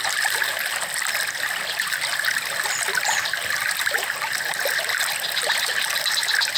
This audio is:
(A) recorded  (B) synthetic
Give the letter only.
A